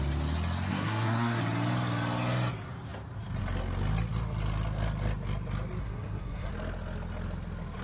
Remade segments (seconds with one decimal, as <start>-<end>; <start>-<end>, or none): 0.7-1.4; 5.8-6.5